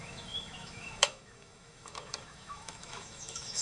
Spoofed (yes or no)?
yes